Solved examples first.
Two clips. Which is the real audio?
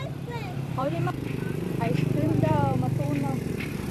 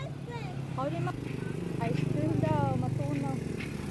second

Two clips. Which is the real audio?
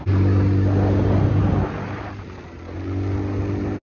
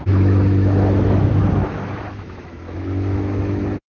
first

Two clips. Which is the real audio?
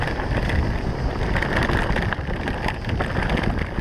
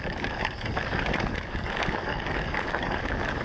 first